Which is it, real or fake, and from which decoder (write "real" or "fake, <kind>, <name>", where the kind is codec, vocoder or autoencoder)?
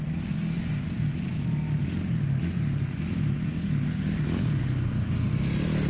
real